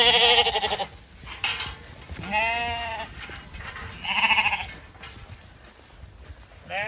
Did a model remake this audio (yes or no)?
no